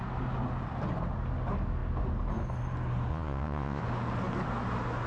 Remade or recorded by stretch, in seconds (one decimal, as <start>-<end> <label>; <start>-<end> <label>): 0.0-3.1 recorded; 3.1-3.8 remade; 3.8-5.1 recorded